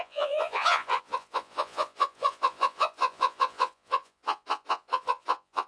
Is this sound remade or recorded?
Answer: remade